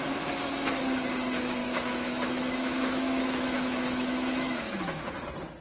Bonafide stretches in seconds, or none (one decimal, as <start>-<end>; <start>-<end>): 0.0-1.6; 5.0-5.6